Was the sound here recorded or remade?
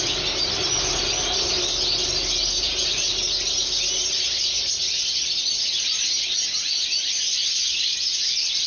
recorded